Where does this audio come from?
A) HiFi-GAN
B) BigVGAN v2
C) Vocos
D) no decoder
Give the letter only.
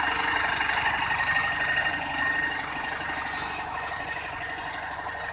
C